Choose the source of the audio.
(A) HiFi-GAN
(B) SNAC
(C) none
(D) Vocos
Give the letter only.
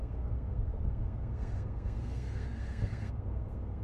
B